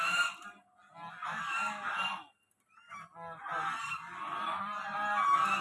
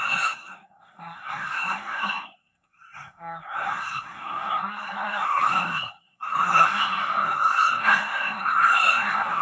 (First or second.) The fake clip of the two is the second